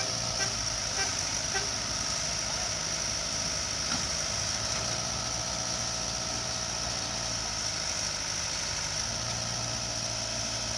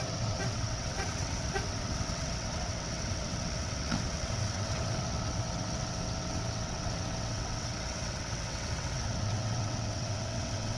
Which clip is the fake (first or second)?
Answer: second